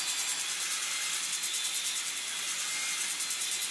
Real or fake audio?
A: real